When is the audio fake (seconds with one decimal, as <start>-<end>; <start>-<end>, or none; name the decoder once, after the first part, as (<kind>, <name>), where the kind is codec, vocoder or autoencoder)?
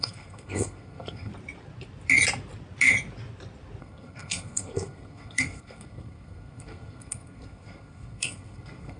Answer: 0.0-1.3 (codec, SNAC); 3.8-9.0